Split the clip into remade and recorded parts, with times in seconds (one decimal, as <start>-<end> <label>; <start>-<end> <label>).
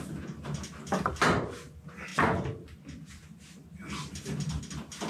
0.0-5.1 recorded